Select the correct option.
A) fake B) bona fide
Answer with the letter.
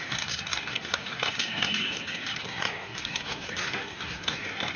A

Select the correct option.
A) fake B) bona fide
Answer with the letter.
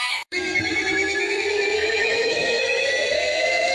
A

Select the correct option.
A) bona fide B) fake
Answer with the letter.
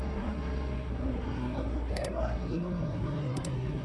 B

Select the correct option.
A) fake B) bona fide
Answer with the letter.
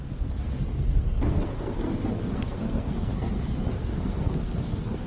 A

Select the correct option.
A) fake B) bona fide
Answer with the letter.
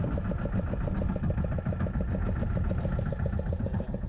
B